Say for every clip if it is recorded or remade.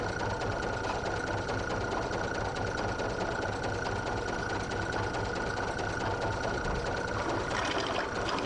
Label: recorded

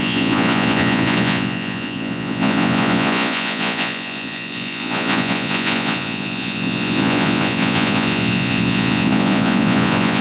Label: remade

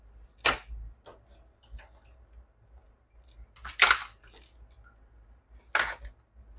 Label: recorded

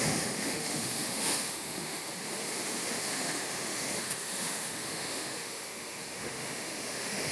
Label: remade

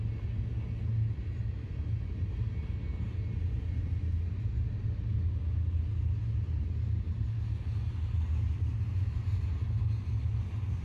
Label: recorded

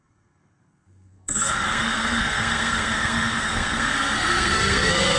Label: remade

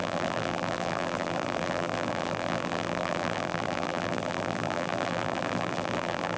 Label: remade